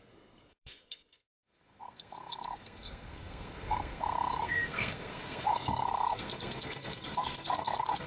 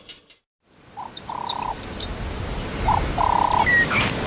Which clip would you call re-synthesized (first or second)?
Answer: first